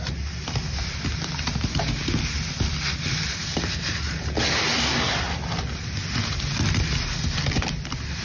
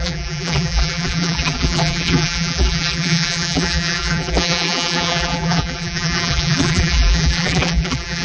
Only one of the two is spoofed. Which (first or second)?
second